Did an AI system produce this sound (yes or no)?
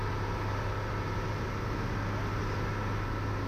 no